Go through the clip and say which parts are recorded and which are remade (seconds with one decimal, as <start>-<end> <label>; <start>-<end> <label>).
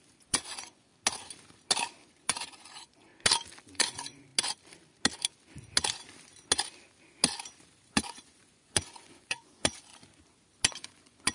0.0-0.9 remade; 0.9-2.0 recorded; 2.0-3.1 remade; 3.1-3.6 recorded; 3.6-4.3 remade; 4.3-7.9 recorded; 7.9-9.9 remade; 9.9-10.7 recorded; 10.7-11.3 remade